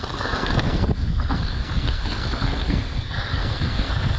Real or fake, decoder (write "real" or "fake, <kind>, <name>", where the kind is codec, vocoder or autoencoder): fake, codec, SNAC